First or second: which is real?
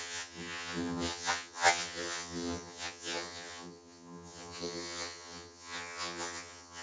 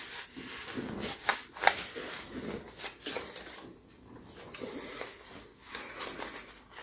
second